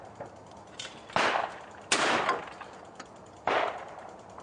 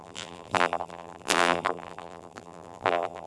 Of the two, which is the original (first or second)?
first